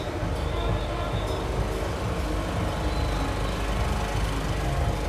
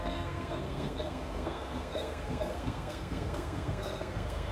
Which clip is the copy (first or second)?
second